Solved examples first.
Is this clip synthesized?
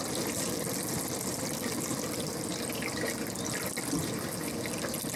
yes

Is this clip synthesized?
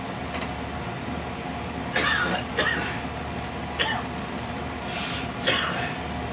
no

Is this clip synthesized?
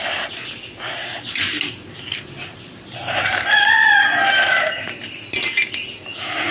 no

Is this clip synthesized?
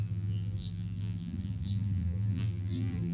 yes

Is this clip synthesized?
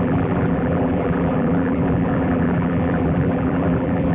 yes